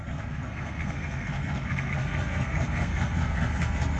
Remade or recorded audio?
remade